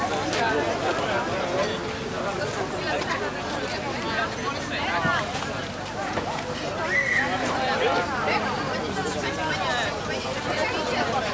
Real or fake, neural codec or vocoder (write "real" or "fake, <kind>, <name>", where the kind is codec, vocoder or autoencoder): real